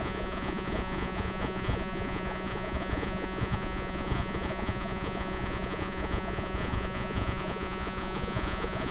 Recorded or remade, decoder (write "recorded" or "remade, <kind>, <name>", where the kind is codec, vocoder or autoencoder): remade, vocoder, Vocos